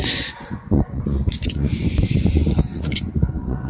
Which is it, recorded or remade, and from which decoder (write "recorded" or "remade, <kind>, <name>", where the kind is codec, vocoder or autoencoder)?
remade, vocoder, Vocos